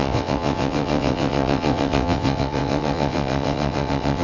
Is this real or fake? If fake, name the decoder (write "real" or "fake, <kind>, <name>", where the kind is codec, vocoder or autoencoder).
fake, vocoder, WaveNeXt